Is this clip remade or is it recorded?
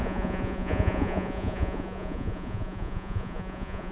remade